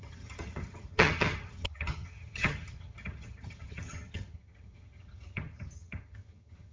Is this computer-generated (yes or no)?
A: yes